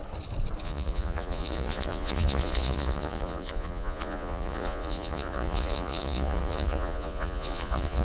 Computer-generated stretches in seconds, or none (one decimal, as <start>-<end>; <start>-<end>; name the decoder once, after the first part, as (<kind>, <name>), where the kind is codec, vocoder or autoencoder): 0.6-8.0 (vocoder, Vocos)